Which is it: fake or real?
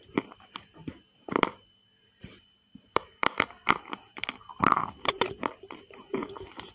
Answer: fake